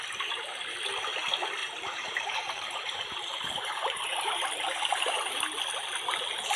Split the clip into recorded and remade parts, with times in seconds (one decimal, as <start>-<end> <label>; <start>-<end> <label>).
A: 0.0-1.6 recorded; 1.6-5.6 remade; 5.6-6.6 recorded